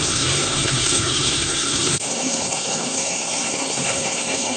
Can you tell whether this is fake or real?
fake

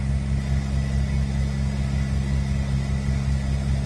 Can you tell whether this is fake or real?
real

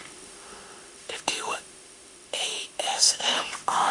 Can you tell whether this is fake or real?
fake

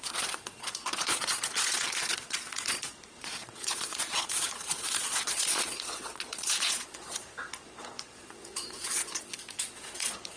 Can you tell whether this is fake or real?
fake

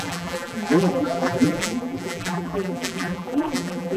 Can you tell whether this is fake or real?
fake